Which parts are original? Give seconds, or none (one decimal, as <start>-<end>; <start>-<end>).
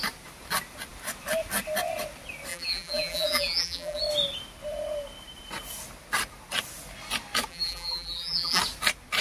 0.0-2.5; 4.0-7.5; 8.6-9.2